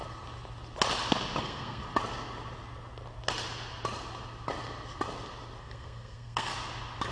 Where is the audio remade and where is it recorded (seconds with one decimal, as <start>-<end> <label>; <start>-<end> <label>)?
0.0-1.4 recorded; 1.4-1.8 remade; 1.8-5.6 recorded; 5.6-6.5 remade; 6.5-7.1 recorded